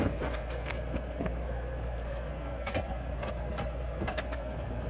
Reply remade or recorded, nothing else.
remade